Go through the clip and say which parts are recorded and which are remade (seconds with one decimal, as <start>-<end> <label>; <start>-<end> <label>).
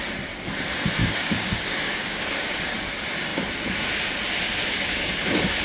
0.0-1.0 recorded; 1.0-2.5 remade; 2.5-4.6 recorded; 4.6-5.6 remade